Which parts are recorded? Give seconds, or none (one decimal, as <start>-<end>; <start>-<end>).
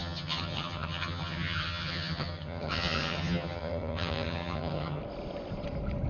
5.0-6.1